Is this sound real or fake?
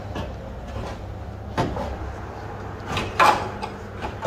real